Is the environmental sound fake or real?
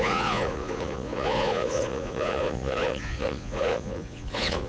fake